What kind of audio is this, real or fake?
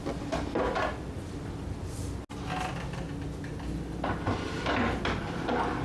real